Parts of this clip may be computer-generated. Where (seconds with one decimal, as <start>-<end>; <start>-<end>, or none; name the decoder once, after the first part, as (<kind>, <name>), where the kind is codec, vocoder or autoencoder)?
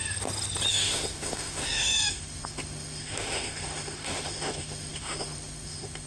0.7-6.1 (autoencoder, DAC-VAE)